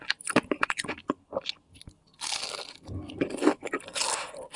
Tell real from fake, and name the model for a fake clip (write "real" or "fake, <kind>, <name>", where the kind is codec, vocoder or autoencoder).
real